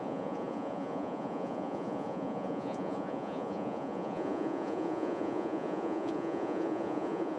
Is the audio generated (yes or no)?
yes